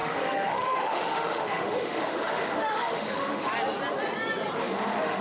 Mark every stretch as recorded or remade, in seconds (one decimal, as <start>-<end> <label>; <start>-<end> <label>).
0.0-3.5 remade; 3.5-4.6 recorded; 4.6-5.2 remade